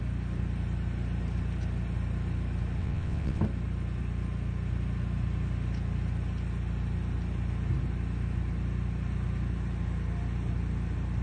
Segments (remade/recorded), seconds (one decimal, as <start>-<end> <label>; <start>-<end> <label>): 0.0-2.8 recorded; 2.8-3.4 remade; 3.4-11.2 recorded